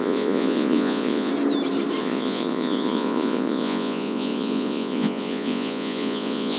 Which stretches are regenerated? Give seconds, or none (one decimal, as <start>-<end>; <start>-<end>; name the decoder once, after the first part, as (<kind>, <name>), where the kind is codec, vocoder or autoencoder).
0.0-1.3 (vocoder, Vocos); 2.0-6.6